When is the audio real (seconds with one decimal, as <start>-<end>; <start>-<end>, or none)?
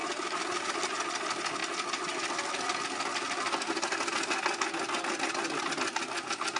0.0-6.6